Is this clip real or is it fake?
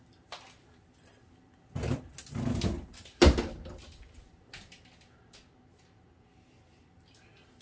real